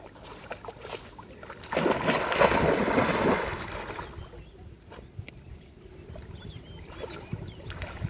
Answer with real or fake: real